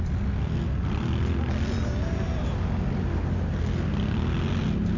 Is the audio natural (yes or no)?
yes